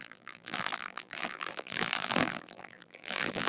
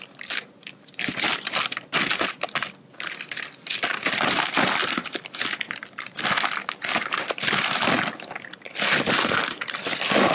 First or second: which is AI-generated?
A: first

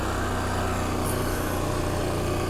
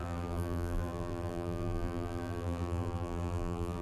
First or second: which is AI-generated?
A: second